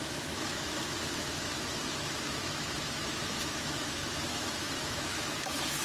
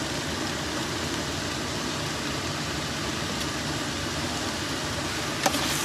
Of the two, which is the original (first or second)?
second